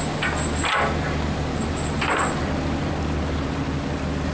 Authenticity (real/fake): real